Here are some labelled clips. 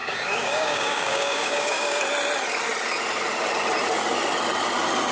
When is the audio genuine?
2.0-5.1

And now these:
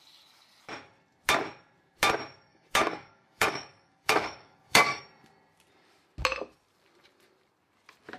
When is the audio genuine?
0.0-2.5; 5.0-8.2

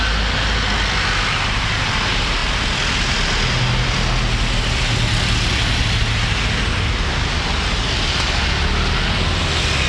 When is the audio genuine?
0.0-9.9

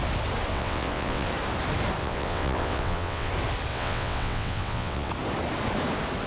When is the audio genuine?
0.0-0.5; 1.3-2.0; 3.3-3.7; 5.1-6.3

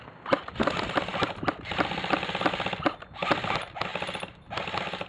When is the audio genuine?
0.0-5.1

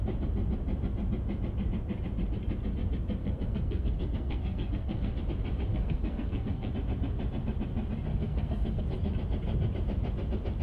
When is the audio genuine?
0.0-3.2; 5.2-5.7; 6.7-8.1; 8.8-10.6

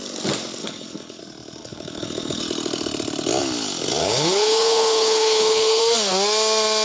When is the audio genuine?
0.0-0.6; 1.2-1.6; 2.4-4.0; 5.8-6.8